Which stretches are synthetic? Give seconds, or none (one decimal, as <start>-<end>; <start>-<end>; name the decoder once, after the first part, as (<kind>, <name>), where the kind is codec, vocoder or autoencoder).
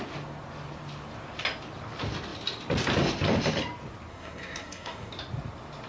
4.1-5.1 (codec, SNAC)